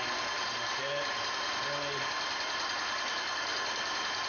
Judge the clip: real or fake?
real